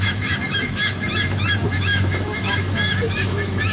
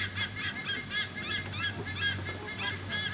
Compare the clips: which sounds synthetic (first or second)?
first